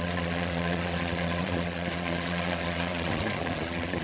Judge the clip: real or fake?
fake